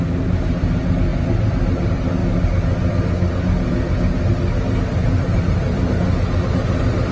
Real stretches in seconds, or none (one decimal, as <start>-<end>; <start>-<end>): 0.0-7.1